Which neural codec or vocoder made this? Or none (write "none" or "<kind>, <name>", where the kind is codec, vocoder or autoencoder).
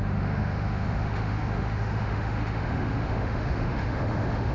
autoencoder, DAC-VAE